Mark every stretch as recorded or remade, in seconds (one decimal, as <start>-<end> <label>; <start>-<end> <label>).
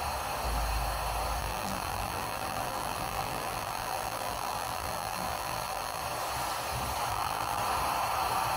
0.0-1.4 recorded; 1.4-6.0 remade; 6.0-7.1 recorded; 7.1-7.6 remade; 7.6-8.6 recorded